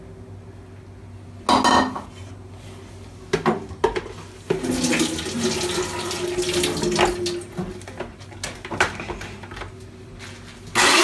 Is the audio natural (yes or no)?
yes